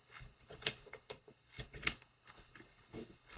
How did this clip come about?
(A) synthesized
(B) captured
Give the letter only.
A